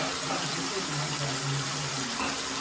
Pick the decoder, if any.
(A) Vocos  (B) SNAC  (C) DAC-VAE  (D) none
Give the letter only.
D